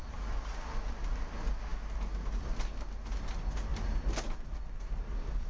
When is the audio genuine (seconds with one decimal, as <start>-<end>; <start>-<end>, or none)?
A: 0.0-5.5